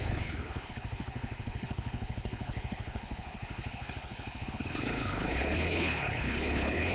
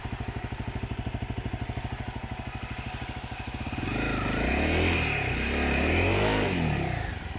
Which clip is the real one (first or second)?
second